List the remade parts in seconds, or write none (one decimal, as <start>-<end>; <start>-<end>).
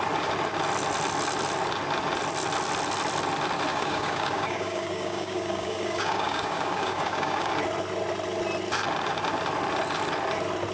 3.7-7.5